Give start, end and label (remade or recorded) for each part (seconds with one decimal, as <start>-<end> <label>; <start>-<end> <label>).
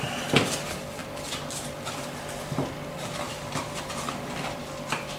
0.0-5.2 recorded